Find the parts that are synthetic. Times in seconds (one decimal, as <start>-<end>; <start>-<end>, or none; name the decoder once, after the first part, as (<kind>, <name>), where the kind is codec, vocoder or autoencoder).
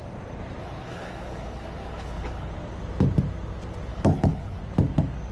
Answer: 0.6-2.5 (codec, HILCodec); 3.9-4.6